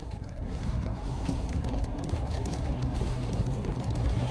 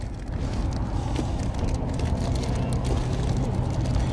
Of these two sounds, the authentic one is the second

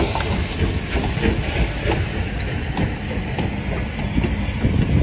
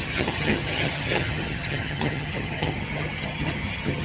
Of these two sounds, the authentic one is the first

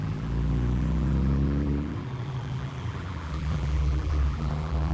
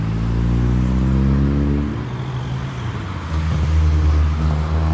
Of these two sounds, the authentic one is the second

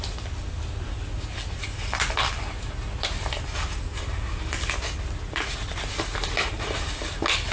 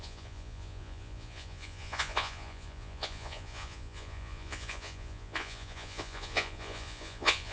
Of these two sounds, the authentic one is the first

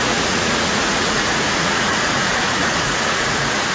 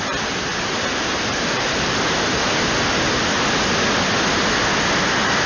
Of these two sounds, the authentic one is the second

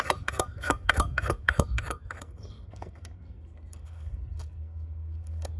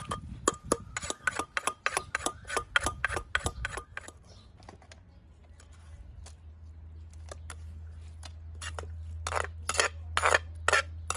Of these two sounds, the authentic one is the second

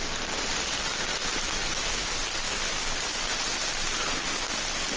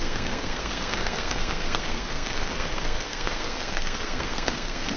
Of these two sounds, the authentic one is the first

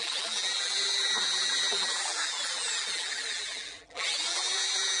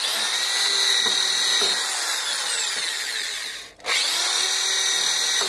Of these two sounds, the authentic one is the second